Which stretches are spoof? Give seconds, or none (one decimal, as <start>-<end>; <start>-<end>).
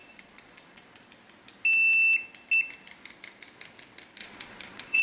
0.0-1.1; 4.2-5.0